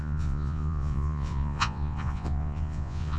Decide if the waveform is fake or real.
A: fake